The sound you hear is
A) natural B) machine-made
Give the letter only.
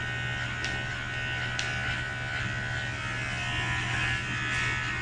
A